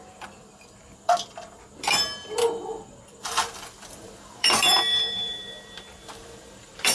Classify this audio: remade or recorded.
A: remade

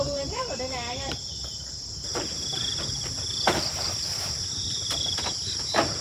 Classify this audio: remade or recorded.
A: remade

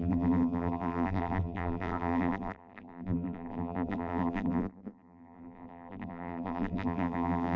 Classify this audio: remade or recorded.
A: remade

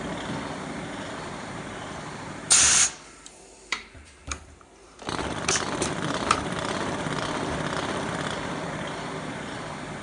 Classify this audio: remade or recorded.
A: remade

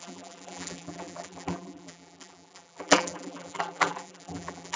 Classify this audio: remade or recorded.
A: remade